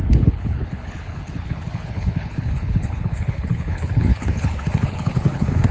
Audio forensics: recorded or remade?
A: remade